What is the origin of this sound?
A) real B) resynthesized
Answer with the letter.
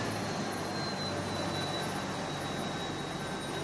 A